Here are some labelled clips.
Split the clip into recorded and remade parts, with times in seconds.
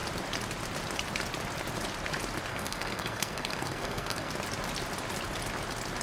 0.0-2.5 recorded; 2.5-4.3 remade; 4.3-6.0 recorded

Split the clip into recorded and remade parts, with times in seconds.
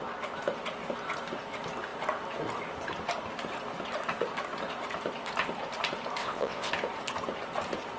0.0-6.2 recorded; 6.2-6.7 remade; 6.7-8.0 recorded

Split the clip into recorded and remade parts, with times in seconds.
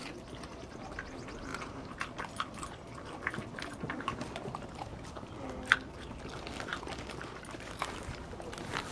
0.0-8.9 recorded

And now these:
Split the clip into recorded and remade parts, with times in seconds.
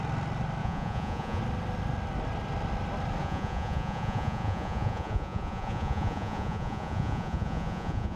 0.0-0.6 recorded; 0.6-1.4 remade; 1.4-3.2 recorded; 3.2-8.2 remade